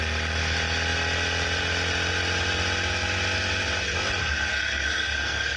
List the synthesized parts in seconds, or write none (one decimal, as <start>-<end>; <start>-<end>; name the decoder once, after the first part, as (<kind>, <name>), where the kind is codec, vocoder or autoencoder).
4.2-5.6 (codec, SNAC)